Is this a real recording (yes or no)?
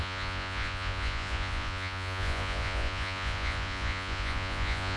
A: no